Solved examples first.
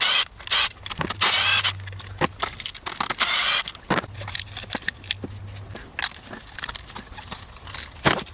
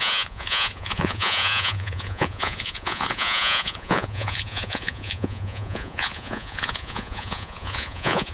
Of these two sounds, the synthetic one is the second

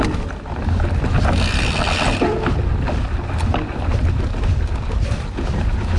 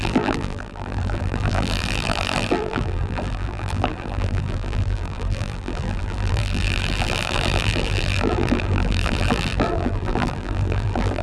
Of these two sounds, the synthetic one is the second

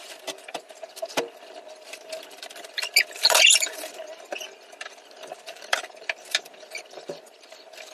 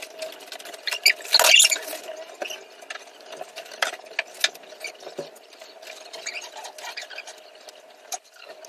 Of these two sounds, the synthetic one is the first